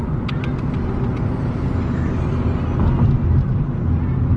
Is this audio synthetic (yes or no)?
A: no